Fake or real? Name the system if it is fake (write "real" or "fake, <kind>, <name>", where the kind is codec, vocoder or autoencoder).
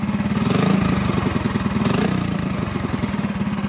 real